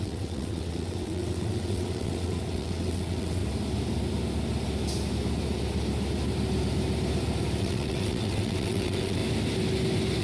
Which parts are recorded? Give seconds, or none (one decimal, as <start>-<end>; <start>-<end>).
3.4-7.6; 9.2-10.2